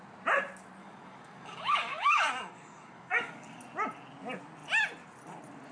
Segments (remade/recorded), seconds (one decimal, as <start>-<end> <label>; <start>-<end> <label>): 0.0-0.8 recorded; 0.8-3.6 remade; 3.6-5.7 recorded